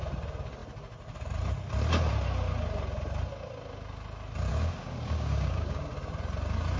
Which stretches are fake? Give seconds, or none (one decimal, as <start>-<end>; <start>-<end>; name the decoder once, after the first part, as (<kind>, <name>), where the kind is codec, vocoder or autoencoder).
4.5-5.9 (codec, DAC)

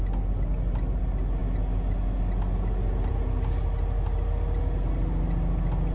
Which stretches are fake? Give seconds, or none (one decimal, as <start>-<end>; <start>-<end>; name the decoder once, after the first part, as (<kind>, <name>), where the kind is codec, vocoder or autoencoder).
none